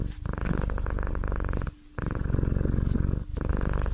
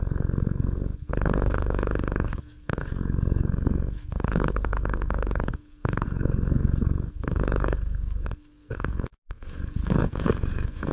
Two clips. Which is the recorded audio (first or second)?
first